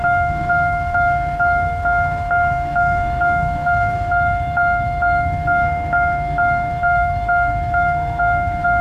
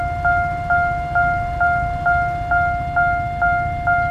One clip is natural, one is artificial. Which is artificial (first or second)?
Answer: first